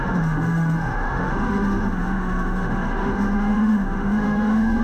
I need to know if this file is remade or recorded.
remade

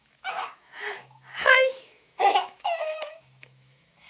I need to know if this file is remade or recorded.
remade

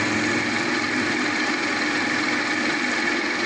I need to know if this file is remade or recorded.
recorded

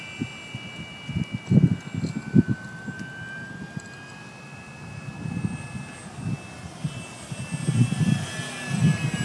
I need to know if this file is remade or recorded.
recorded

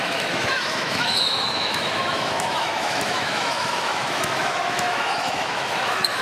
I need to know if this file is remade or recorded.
remade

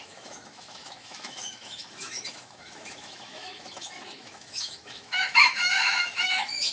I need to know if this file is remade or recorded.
remade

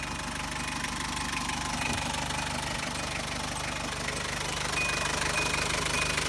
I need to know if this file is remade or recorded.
recorded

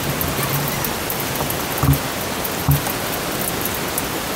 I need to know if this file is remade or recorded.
recorded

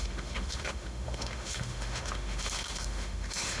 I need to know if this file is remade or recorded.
remade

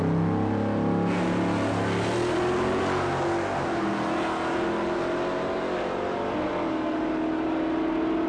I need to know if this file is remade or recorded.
recorded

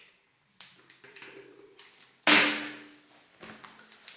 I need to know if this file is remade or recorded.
recorded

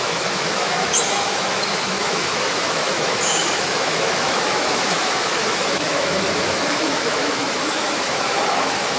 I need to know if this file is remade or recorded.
remade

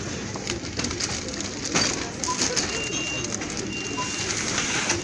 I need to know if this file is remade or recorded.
recorded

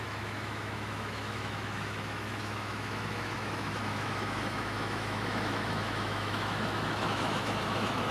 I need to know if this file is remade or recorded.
remade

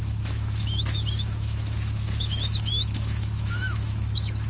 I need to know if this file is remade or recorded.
remade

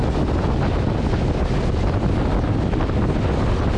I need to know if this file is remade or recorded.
recorded